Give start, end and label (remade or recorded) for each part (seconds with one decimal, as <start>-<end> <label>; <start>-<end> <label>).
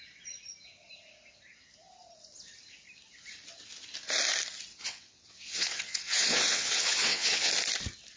0.0-4.7 recorded; 4.7-7.5 remade; 7.5-8.2 recorded